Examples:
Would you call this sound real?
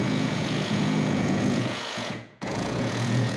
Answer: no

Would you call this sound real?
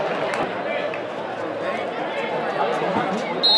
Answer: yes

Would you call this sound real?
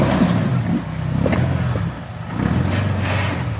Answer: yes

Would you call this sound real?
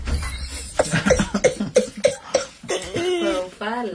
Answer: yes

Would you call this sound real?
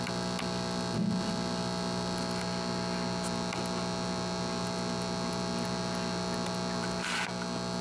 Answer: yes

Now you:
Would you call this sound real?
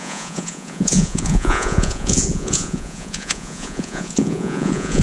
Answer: no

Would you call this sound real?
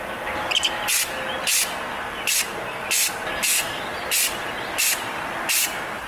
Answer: yes